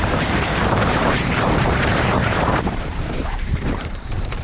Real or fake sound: fake